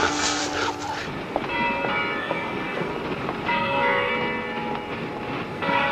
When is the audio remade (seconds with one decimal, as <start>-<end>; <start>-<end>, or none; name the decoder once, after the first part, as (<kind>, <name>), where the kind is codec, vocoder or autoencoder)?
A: 0.0-0.4 (codec, SNAC); 2.2-2.9; 3.5-4.1; 5.5-5.9